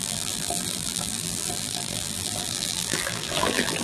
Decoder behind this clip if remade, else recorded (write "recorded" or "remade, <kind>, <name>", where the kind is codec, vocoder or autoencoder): remade, vocoder, BigVGAN v2